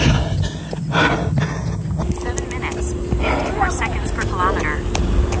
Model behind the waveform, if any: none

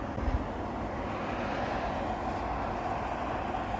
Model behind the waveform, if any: none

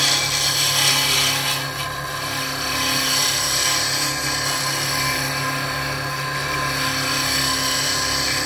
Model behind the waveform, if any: none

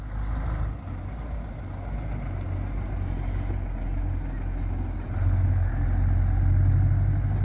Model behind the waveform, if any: none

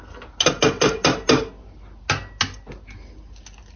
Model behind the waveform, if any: none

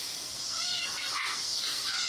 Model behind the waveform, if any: codec, SNAC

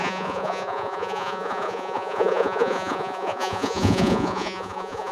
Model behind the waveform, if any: vocoder, Vocos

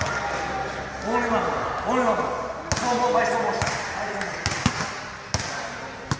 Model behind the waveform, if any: none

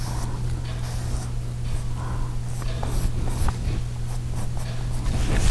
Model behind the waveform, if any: none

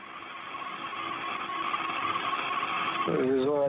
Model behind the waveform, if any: none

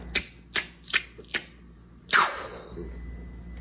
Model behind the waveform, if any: none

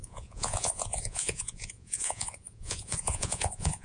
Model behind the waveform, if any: vocoder, Vocos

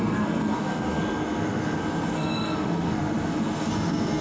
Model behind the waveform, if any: codec, SNAC